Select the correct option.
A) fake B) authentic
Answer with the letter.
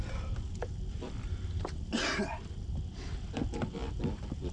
B